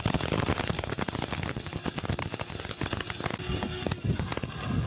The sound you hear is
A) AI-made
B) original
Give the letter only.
B